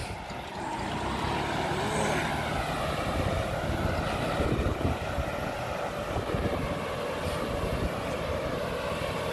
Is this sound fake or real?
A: real